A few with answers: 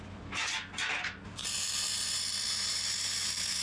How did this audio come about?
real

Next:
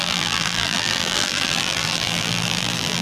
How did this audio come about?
fake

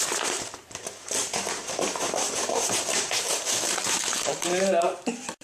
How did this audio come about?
fake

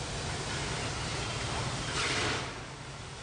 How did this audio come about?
real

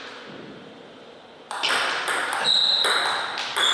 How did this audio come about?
real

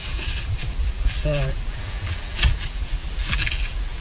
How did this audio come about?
fake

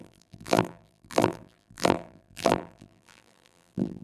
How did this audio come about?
fake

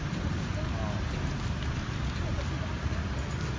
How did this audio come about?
real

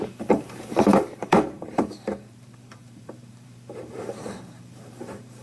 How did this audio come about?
fake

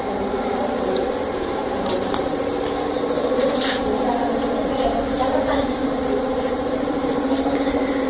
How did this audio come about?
fake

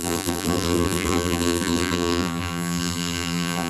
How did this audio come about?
fake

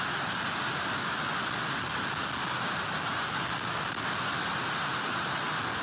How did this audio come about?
real